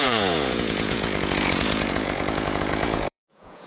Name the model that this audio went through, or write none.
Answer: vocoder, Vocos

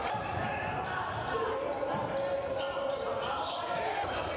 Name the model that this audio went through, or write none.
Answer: none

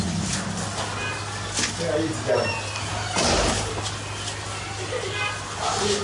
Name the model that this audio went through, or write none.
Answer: none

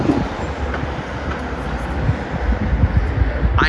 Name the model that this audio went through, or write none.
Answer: none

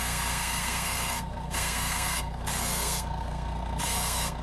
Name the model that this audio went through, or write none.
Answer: codec, SNAC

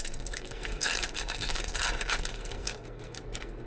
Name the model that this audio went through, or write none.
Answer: codec, SNAC